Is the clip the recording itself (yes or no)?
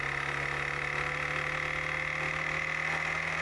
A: yes